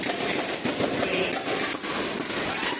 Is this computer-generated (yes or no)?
no